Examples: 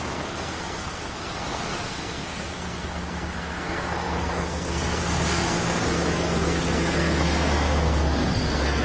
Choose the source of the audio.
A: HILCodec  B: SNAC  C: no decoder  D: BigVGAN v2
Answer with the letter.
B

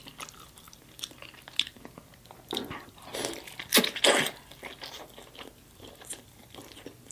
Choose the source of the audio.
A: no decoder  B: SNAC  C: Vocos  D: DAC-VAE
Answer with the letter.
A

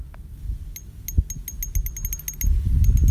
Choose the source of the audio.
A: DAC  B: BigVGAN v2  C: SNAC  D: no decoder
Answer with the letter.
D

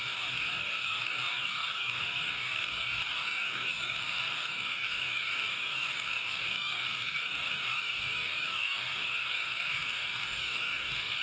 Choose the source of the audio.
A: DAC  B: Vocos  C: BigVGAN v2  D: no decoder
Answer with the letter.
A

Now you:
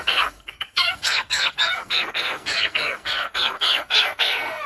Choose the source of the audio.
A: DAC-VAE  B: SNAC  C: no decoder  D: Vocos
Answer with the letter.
B